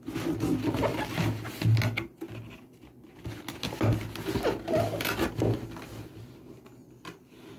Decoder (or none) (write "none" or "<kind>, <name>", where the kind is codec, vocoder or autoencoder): none